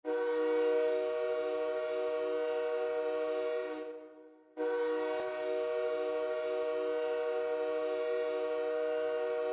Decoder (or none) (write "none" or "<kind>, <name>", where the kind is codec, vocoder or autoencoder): none